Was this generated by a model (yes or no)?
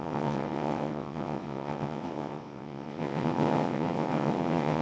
yes